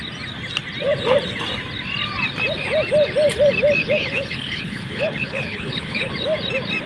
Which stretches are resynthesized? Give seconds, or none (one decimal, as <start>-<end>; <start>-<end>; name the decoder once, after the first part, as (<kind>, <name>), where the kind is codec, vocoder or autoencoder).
3.8-6.1 (codec, HILCodec)